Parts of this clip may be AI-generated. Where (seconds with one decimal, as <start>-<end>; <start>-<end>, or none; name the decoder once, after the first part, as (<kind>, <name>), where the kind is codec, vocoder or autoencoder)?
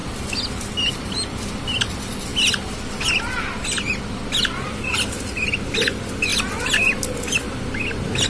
none